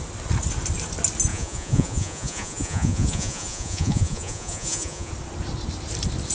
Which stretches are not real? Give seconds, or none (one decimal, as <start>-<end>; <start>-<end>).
1.3-5.1